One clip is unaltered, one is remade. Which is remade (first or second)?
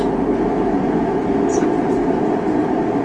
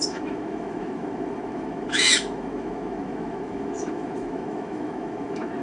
second